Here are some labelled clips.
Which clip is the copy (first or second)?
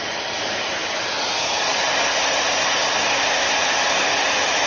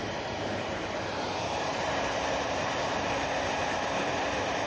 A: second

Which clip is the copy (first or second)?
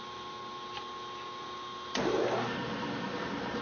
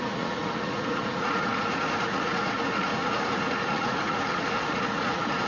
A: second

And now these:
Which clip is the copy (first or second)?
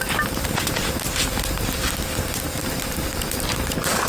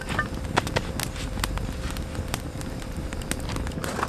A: first